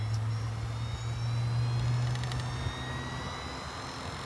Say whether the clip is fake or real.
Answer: real